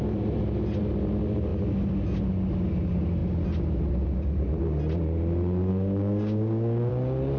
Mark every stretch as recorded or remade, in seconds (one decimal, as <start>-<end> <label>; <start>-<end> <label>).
0.0-5.7 recorded; 5.7-6.9 remade; 6.9-7.4 recorded